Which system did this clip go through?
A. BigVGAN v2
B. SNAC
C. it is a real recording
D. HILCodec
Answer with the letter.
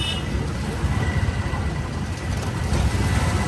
C